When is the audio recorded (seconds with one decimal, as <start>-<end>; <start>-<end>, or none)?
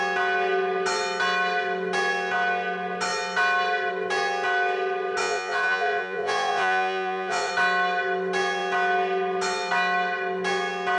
0.0-5.2; 7.5-11.0